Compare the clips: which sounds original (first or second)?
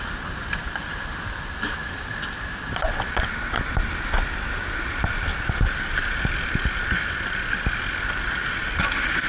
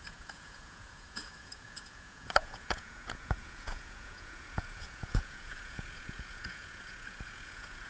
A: first